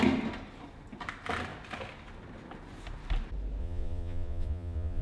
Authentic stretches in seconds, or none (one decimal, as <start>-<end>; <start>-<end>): 0.0-3.6